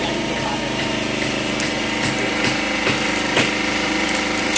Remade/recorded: recorded